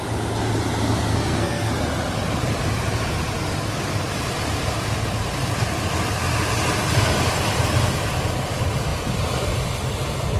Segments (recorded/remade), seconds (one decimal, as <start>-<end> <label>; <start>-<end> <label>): 0.0-1.1 recorded; 1.1-1.7 remade; 1.7-10.4 recorded